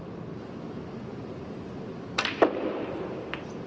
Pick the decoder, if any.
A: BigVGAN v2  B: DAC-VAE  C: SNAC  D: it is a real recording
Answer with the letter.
A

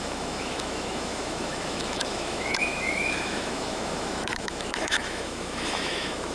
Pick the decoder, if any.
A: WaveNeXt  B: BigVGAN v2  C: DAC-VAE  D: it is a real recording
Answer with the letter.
C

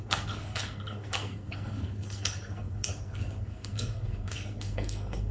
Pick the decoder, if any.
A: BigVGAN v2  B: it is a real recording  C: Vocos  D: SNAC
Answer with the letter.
D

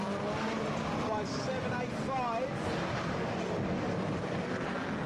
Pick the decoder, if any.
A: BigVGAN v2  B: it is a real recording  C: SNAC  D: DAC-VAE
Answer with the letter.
B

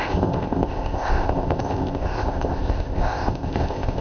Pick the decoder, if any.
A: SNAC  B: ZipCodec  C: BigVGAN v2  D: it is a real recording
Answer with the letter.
B